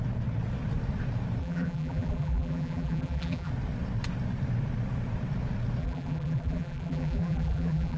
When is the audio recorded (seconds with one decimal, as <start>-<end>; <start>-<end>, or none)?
0.0-1.4; 3.5-5.8